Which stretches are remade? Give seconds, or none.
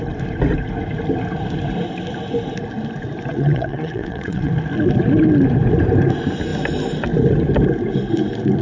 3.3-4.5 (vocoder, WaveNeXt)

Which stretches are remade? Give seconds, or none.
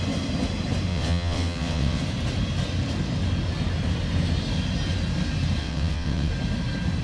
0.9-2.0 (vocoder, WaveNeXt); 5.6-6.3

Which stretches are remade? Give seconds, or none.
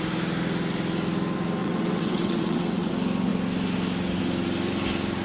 1.6-2.9 (vocoder, WaveNeXt)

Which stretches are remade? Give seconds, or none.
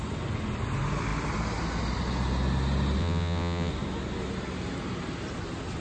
3.0-3.7 (vocoder, WaveNeXt)